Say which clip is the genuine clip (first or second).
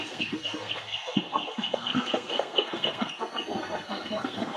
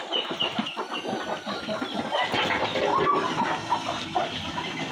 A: second